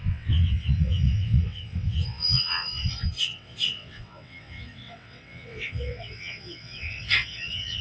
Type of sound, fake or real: fake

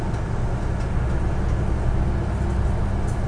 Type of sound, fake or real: real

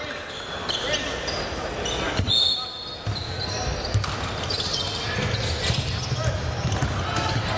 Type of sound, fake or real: real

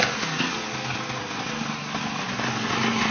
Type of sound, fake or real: real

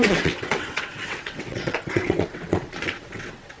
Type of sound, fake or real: fake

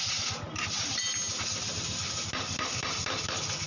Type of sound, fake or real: real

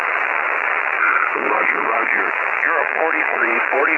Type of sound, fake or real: fake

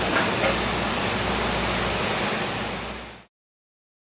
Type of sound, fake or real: real